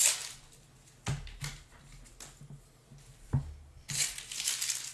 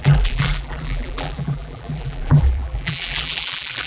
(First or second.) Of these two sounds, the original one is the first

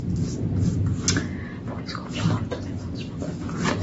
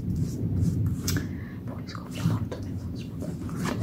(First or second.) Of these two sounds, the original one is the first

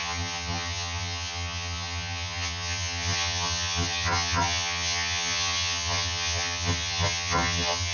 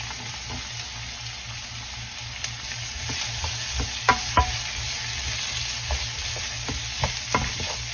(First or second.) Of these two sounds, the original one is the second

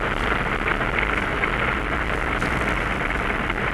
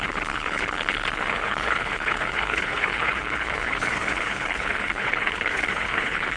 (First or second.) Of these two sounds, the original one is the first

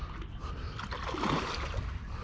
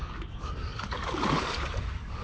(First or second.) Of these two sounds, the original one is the first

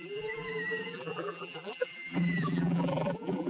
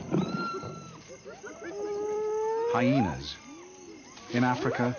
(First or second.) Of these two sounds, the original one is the second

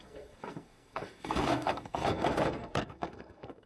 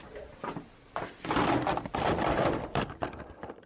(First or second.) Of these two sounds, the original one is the second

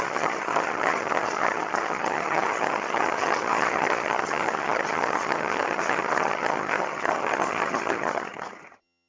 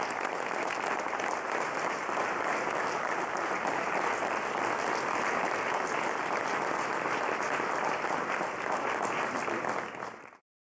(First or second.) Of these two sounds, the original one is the second